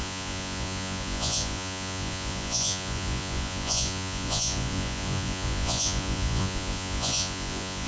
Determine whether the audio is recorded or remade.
remade